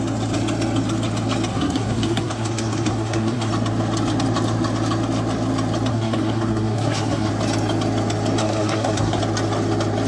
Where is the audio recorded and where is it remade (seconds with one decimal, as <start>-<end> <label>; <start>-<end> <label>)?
0.0-1.5 recorded; 1.5-3.5 remade; 3.5-5.9 recorded; 5.9-7.3 remade; 7.3-8.4 recorded; 8.4-9.2 remade; 9.2-10.1 recorded